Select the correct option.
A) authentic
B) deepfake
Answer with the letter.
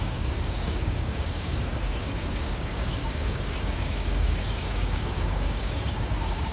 B